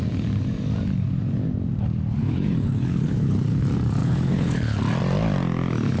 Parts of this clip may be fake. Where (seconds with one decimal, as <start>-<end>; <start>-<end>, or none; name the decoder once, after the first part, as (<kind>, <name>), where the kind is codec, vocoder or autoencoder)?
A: 2.2-3.6 (codec, HILCodec); 4.0-4.8

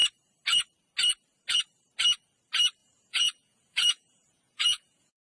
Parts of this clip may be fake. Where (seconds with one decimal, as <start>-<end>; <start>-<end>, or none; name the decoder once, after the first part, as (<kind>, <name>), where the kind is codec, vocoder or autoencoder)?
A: 2.8-5.2 (vocoder, Vocos)

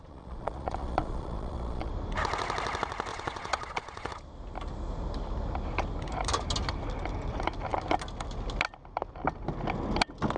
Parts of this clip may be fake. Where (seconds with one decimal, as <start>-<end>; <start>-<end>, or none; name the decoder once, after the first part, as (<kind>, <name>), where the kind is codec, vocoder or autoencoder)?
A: 0.0-1.9 (vocoder, Vocos); 3.1-4.1

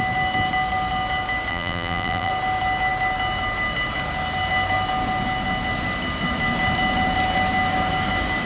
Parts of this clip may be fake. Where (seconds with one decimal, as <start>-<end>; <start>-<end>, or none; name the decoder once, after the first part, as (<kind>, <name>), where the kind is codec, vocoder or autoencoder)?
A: 1.5-2.3 (vocoder, BigVGAN v2)

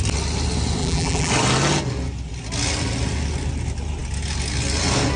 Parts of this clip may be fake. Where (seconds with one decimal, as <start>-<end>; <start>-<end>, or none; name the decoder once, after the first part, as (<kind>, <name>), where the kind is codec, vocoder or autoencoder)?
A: 0.8-1.3 (vocoder, BigVGAN v2)